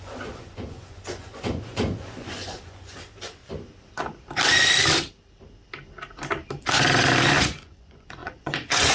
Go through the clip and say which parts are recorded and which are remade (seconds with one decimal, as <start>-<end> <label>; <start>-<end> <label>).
0.0-3.4 remade; 3.4-7.4 recorded; 7.4-8.9 remade